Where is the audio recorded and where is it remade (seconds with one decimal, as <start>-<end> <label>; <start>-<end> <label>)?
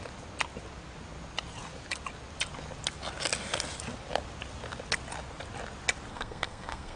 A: 0.0-6.1 recorded; 6.1-7.0 remade